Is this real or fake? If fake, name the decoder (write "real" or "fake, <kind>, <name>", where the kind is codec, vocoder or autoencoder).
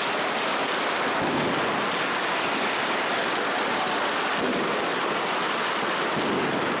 real